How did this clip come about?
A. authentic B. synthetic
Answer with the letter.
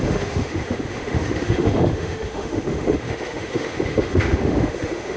B